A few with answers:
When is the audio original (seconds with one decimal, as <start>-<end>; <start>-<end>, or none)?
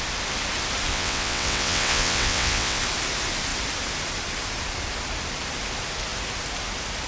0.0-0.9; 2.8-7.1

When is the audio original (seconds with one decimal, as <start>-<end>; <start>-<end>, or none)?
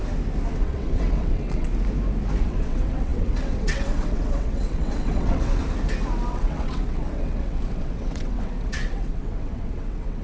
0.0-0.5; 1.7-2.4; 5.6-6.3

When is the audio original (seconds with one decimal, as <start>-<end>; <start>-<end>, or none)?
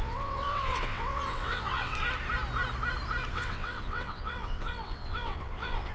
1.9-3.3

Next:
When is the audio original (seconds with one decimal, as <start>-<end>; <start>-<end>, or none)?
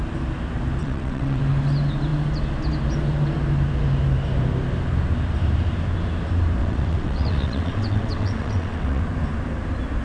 0.0-0.8; 1.4-6.6; 9.0-10.0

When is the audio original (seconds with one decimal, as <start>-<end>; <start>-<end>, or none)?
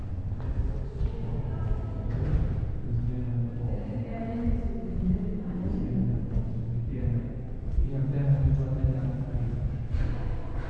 0.0-10.7